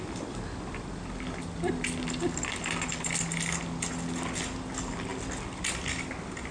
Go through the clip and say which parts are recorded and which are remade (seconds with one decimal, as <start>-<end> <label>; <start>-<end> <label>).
0.0-6.5 recorded